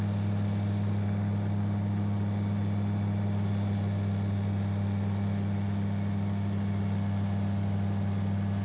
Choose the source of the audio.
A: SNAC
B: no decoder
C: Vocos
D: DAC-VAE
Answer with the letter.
B